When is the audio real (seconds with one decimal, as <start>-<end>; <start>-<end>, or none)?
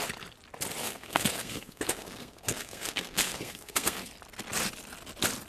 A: 0.0-0.8; 4.1-5.5